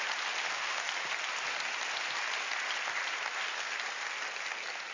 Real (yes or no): yes